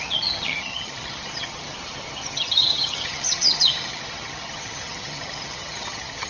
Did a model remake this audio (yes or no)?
yes